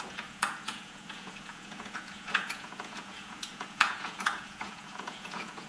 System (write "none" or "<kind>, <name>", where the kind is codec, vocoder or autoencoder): vocoder, Vocos